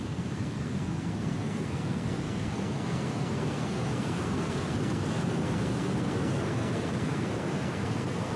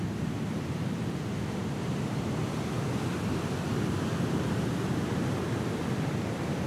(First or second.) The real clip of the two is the second